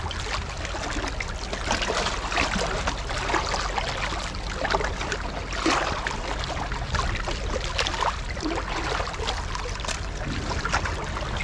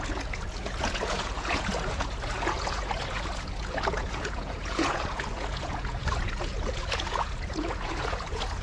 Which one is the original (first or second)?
first